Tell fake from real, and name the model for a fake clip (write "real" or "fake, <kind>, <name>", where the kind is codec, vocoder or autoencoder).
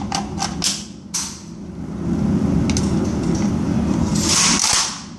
real